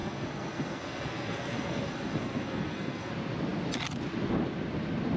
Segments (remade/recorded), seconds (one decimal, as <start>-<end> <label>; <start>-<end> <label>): 0.0-3.1 remade; 3.1-5.2 recorded